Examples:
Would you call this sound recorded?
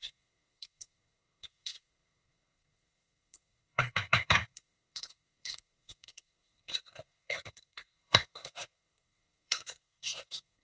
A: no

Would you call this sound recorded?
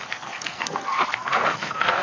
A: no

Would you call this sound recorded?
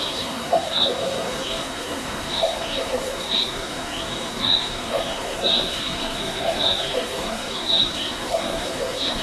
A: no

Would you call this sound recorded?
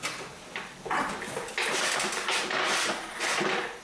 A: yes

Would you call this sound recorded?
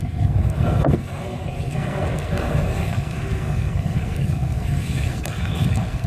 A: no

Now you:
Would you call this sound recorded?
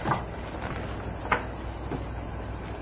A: yes